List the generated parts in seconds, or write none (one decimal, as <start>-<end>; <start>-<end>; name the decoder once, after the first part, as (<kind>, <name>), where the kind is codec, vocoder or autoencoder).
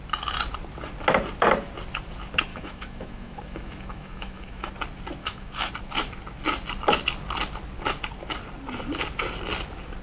2.5-4.7 (autoencoder, DAC-VAE); 5.2-5.7